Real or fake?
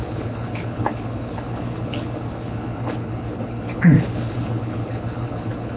fake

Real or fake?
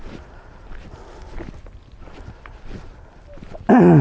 real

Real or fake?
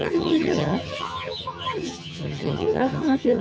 fake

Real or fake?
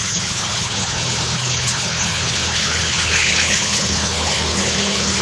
fake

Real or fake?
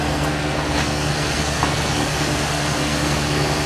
fake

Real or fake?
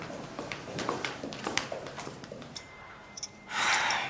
fake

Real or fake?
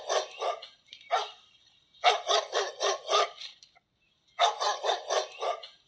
real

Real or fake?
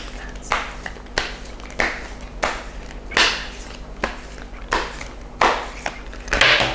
real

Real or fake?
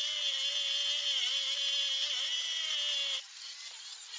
real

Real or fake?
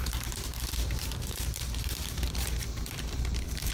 fake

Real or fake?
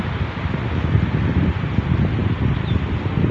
real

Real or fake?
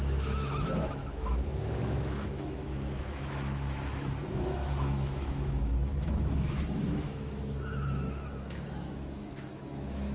fake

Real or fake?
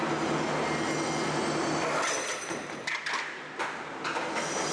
real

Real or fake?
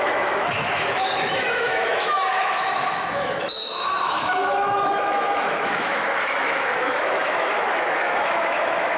fake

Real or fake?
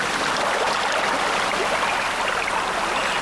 real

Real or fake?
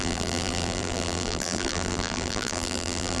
fake